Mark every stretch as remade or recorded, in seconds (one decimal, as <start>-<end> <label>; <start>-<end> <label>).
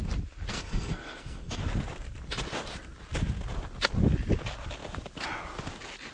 0.0-0.5 recorded; 0.5-1.6 remade; 1.6-6.1 recorded